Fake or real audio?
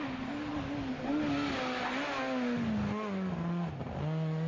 real